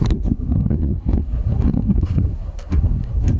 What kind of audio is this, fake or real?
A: fake